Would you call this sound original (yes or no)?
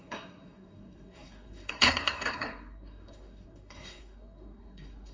no